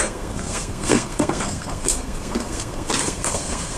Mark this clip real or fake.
fake